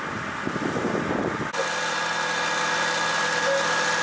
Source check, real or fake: real